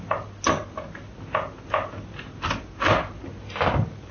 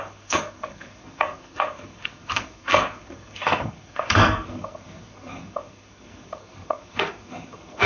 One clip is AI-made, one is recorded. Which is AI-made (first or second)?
second